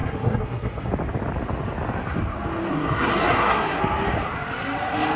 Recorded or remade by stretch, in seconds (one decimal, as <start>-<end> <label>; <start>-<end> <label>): 0.0-0.9 remade; 0.9-2.7 recorded; 2.7-3.8 remade; 3.8-5.2 recorded